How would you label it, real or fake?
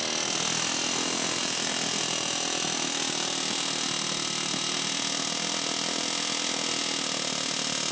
real